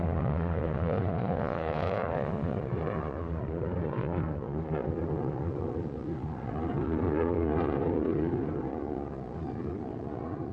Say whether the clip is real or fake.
fake